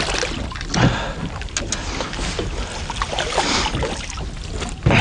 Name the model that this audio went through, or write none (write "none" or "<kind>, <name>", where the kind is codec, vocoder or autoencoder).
none